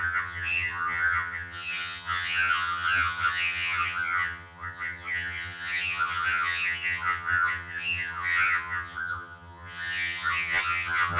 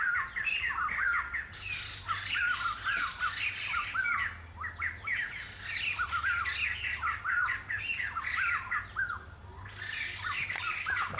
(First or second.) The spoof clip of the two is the first